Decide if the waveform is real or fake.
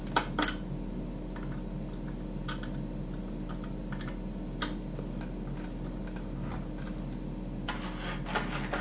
real